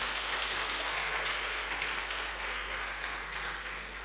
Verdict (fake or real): fake